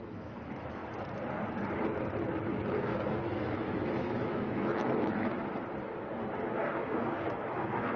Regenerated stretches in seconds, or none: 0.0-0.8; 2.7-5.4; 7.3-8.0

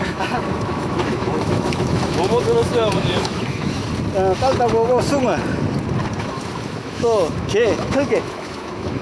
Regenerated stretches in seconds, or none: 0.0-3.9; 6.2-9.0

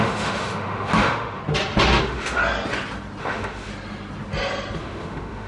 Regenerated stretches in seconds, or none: 0.0-1.4; 2.0-2.4; 3.2-3.7; 4.8-5.5

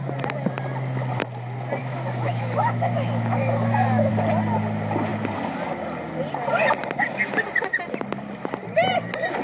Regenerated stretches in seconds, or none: 1.8-4.1

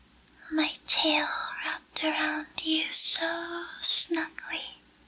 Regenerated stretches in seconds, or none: 2.5-4.5

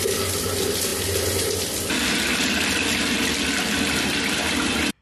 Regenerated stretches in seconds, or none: none